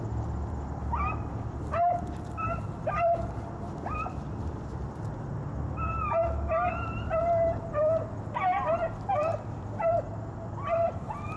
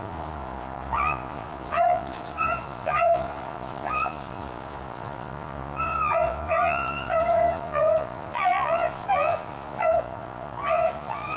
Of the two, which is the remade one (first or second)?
second